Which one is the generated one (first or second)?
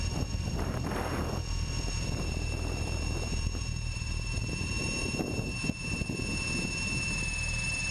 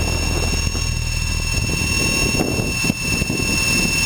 first